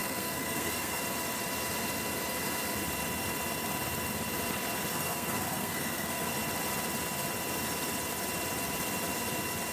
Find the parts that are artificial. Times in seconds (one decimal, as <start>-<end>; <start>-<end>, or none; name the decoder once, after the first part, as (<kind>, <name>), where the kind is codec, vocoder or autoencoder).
0.0-1.0 (codec, SNAC); 4.9-6.3